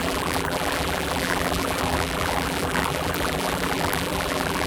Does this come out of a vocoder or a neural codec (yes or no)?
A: yes